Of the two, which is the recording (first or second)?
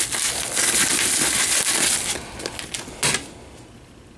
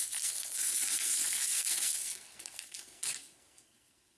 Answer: first